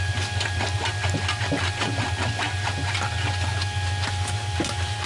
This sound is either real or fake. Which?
real